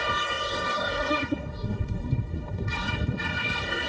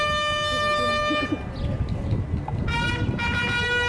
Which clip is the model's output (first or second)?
first